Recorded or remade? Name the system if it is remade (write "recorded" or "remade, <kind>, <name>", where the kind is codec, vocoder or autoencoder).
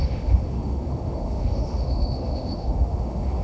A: remade, autoencoder, DAC-VAE